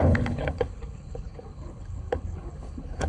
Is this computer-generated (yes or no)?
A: yes